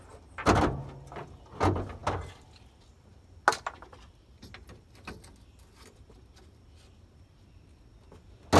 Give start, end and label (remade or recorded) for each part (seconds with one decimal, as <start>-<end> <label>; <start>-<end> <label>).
0.0-8.6 recorded